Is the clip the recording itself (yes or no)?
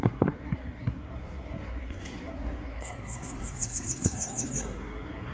no